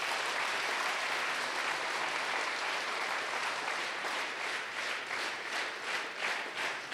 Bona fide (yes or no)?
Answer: no